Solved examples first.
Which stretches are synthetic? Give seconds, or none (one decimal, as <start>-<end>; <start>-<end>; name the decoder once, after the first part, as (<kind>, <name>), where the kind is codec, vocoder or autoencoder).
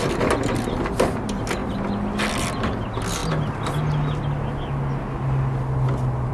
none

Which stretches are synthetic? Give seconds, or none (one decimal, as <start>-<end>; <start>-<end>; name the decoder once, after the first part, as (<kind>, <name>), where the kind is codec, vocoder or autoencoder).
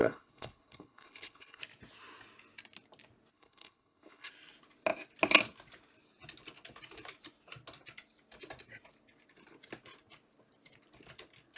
0.0-1.6 (codec, HILCodec); 3.3-4.3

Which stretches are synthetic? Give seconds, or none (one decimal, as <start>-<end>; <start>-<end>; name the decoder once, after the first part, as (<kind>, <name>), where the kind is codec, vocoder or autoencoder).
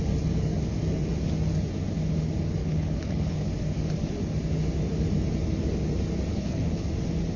2.6-3.5 (codec, HILCodec); 6.3-6.9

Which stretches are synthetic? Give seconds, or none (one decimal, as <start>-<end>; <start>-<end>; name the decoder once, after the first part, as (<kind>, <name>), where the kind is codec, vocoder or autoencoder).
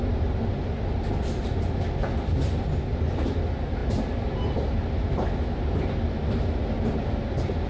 none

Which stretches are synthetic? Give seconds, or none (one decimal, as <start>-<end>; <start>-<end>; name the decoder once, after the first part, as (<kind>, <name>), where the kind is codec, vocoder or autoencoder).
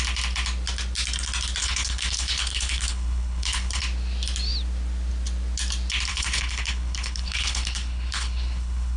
1.6-3.8 (codec, HILCodec); 6.1-9.0